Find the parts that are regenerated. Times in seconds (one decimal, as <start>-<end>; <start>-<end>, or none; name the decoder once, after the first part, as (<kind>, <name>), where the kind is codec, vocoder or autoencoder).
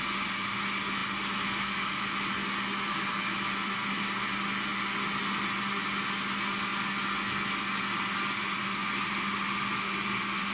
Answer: none